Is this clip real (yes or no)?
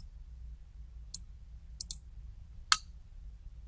yes